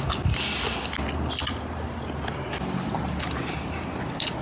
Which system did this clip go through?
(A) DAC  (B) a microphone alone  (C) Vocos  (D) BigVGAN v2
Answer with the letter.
B